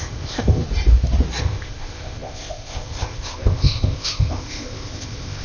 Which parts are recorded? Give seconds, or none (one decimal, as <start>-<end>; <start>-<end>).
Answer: 0.6-1.4